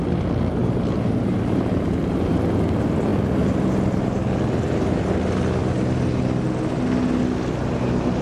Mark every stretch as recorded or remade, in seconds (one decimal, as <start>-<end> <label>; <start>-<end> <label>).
0.0-0.6 recorded; 0.6-2.6 remade; 2.6-8.2 recorded